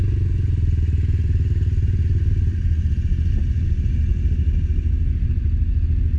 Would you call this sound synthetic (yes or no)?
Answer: no